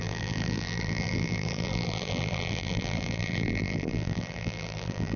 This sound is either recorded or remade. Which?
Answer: remade